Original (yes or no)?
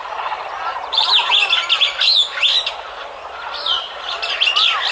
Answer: yes